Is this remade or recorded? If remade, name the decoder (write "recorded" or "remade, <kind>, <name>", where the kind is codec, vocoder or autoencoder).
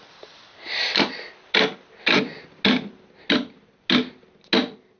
recorded